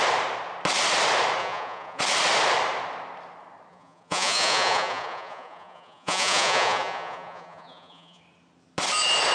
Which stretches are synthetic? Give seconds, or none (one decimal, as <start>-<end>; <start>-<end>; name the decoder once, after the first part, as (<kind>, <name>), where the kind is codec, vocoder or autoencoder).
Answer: 1.4-2.0 (vocoder, Vocos); 3.7-8.2